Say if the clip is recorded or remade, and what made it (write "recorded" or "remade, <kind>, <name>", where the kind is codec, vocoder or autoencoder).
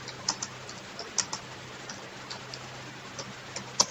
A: recorded